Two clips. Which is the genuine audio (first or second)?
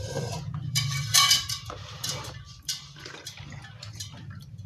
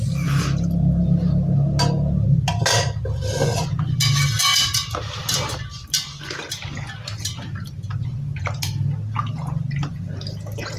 second